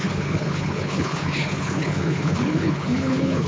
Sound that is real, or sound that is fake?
fake